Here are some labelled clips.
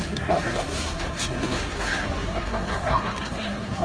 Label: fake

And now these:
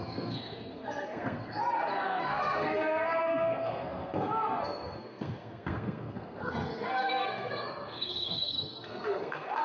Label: fake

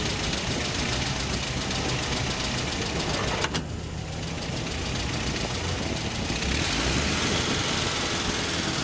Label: real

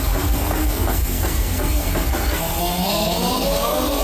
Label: fake